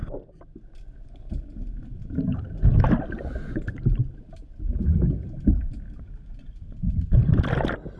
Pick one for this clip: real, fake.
real